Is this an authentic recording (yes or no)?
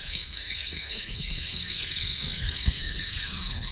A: no